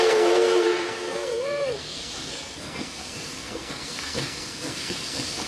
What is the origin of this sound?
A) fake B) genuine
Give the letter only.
A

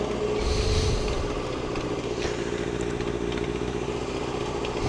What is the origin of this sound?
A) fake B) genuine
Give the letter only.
B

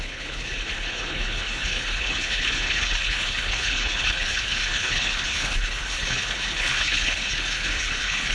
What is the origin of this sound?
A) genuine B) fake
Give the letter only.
B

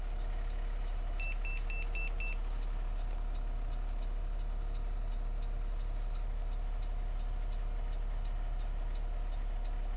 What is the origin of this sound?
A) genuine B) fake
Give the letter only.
A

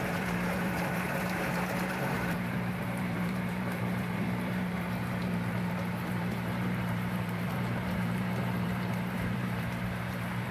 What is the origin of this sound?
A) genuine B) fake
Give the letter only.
B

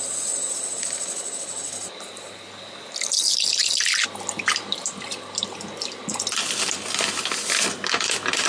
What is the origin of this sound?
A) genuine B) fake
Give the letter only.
A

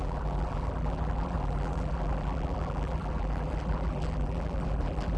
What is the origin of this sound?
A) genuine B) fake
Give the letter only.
B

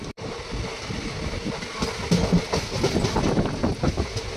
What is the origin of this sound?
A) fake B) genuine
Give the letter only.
B